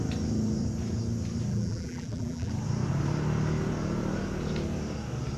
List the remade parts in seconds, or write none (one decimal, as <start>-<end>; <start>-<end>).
1.5-2.5